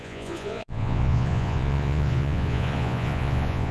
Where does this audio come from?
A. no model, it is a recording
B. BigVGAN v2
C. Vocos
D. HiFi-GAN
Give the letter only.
C